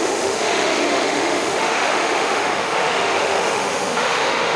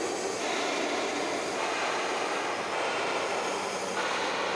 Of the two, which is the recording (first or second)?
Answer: second